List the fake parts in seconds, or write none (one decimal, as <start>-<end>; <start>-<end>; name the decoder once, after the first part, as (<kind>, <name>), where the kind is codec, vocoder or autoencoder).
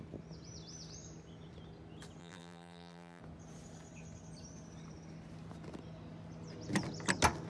2.2-3.2 (vocoder, BigVGAN v2)